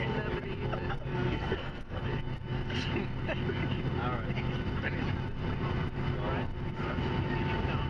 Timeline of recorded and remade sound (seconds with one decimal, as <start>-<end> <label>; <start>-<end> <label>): 0.0-1.1 recorded; 1.1-2.0 remade; 2.0-7.9 recorded